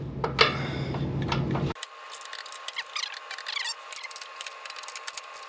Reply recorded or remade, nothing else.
recorded